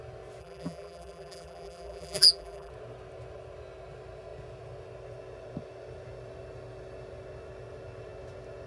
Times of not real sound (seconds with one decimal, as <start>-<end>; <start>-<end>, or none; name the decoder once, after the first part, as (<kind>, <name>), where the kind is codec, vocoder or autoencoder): 0.4-2.7 (vocoder, BigVGAN v2)